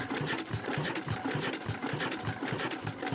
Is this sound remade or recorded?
recorded